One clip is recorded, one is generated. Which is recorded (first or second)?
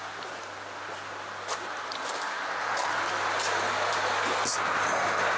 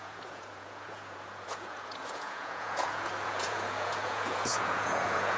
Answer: first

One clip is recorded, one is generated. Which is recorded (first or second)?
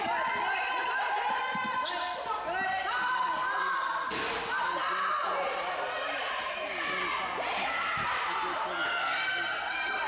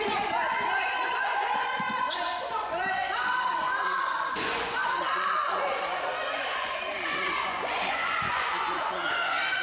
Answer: first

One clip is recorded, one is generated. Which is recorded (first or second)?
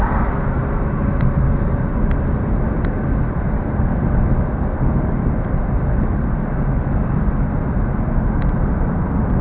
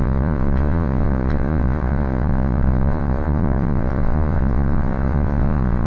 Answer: first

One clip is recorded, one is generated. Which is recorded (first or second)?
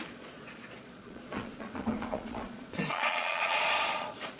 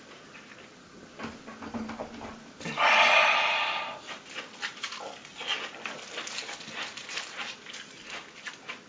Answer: second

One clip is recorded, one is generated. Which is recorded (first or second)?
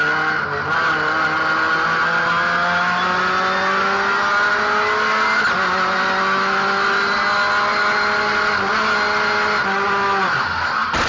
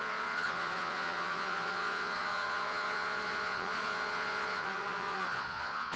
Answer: first